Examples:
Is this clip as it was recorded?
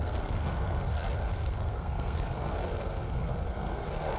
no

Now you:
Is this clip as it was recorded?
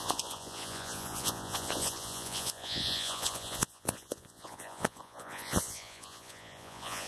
no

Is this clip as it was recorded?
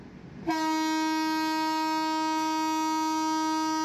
yes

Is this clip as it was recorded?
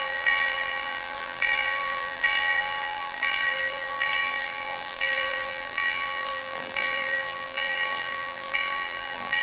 no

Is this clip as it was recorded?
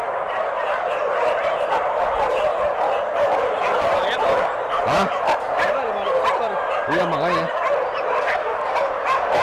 yes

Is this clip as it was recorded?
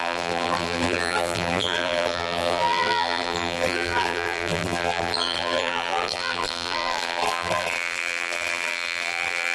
no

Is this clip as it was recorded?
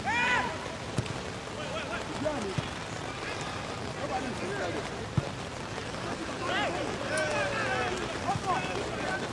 yes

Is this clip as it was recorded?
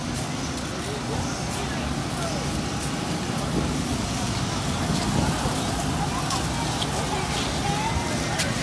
yes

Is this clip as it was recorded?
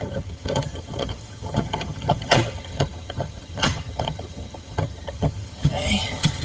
no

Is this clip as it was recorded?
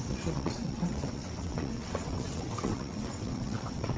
no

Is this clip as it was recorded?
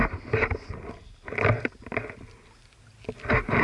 yes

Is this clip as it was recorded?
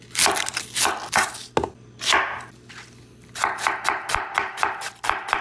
yes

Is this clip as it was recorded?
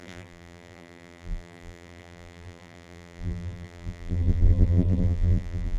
no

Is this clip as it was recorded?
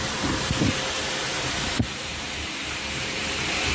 no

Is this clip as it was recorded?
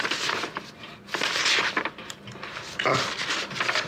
yes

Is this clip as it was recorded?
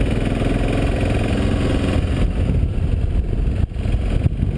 yes